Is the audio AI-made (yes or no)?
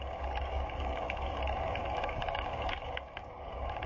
yes